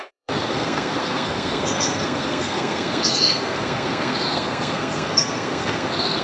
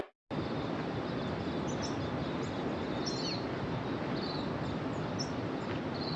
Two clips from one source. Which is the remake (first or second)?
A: first